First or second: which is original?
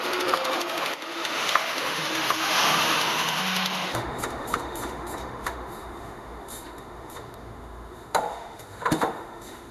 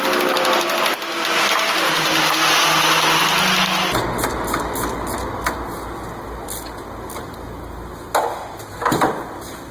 second